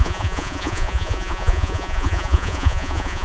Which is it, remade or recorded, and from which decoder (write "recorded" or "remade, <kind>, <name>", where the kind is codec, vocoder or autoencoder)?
remade, vocoder, Vocos